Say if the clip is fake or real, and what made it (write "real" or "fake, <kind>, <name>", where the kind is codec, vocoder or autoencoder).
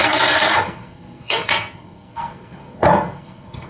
fake, codec, SNAC